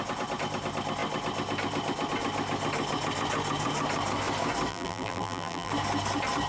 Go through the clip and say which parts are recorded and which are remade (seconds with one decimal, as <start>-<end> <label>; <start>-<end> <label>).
0.0-4.7 recorded; 4.7-5.7 remade; 5.7-6.5 recorded